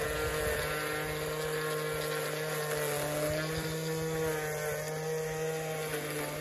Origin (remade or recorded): recorded